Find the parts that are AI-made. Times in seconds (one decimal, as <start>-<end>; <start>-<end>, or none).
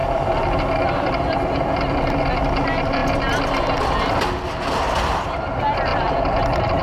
5.9-6.8